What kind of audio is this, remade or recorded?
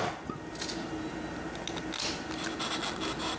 recorded